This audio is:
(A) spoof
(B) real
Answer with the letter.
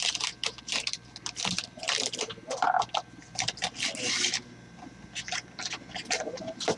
B